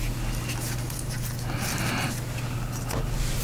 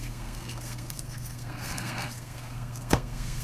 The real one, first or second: first